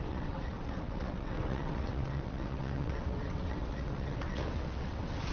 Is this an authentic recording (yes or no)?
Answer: no